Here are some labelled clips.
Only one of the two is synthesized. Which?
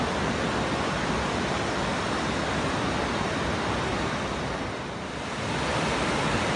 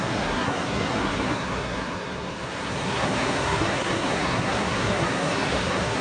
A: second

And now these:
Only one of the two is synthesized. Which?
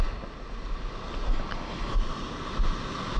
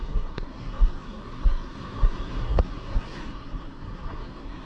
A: second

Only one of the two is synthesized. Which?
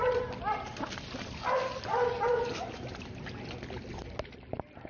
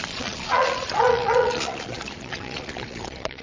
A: second